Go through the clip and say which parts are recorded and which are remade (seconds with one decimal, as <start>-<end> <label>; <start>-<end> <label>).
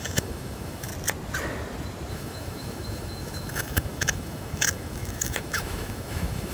0.0-0.9 remade; 0.9-2.1 recorded; 2.1-6.5 remade